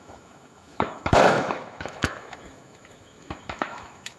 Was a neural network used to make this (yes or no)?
yes